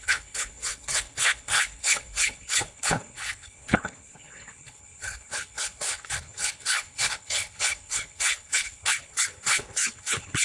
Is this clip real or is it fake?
fake